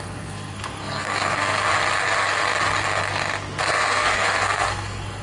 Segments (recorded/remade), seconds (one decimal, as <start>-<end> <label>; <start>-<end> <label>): 0.0-1.7 remade; 1.7-3.6 recorded; 3.6-5.2 remade